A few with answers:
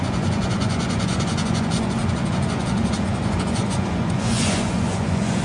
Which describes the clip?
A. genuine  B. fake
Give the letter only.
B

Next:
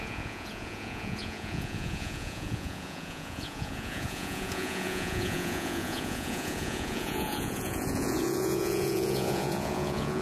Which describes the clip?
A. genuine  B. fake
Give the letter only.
B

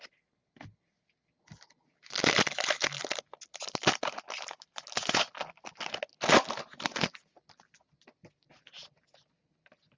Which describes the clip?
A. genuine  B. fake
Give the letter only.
A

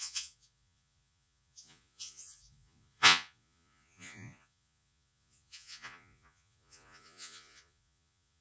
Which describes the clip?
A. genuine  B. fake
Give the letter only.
B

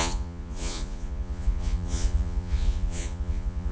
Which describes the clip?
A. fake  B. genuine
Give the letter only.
A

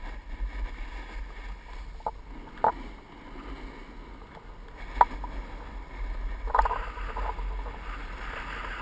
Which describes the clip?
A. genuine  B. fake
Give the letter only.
A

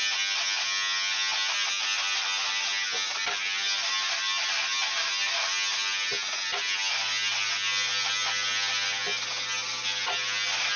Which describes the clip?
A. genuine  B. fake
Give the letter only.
A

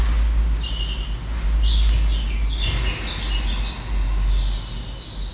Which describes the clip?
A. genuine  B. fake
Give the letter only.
A